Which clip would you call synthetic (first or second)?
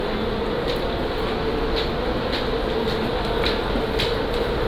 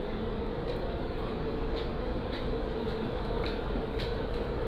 second